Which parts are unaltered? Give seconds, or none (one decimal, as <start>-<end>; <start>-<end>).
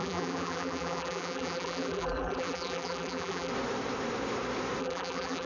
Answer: 3.5-4.8